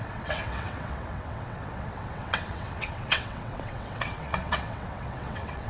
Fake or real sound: fake